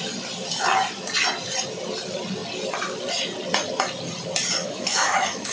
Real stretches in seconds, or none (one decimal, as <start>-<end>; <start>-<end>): 0.0-4.6